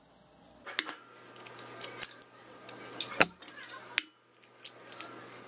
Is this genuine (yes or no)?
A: yes